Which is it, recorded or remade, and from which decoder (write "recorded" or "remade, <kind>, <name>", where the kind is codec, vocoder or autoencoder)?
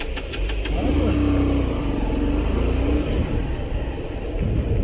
recorded